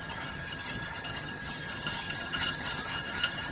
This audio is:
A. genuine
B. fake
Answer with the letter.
B